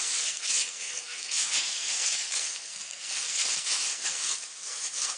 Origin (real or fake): fake